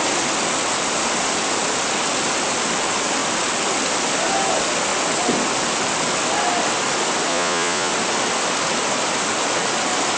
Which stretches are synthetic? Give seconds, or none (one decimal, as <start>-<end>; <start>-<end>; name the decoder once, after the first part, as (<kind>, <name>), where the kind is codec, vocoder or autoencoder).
7.3-7.9 (vocoder, Vocos)